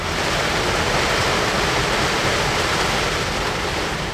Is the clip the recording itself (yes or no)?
yes